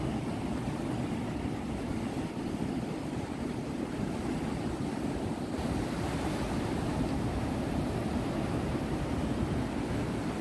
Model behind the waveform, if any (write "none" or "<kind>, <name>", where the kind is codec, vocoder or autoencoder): none